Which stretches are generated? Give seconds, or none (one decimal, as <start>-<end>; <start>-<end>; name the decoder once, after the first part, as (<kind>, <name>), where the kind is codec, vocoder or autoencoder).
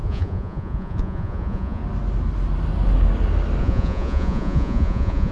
0.0-1.8 (vocoder, Vocos); 3.6-5.3